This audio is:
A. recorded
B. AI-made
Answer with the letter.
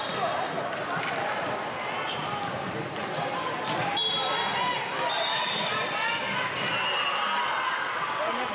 A